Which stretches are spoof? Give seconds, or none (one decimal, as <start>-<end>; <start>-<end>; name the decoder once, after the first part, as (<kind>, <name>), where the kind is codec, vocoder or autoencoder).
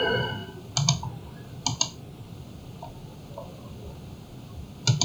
none